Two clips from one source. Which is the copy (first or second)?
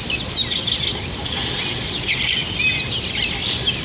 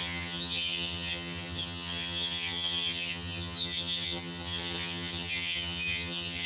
second